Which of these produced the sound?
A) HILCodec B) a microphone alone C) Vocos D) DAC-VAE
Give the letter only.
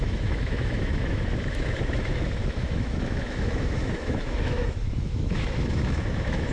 D